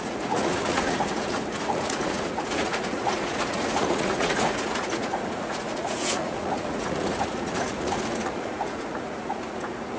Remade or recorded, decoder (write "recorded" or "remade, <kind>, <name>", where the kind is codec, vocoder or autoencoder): remade, vocoder, Vocos